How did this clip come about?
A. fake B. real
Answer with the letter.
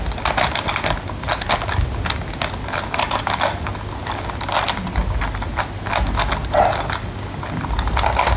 B